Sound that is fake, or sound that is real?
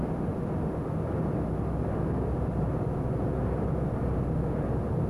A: real